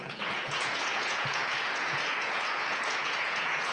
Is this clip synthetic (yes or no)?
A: yes